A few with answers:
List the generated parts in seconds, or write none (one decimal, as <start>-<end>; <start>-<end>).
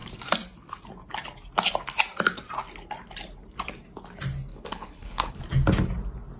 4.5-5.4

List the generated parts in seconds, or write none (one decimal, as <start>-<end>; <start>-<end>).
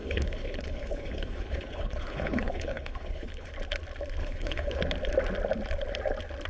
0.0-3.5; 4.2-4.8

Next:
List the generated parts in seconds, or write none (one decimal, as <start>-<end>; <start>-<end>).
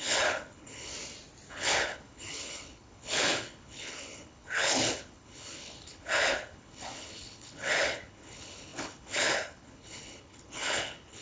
0.0-0.9; 1.5-11.2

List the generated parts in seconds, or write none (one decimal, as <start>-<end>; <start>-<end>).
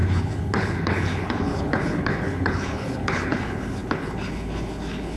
0.0-5.2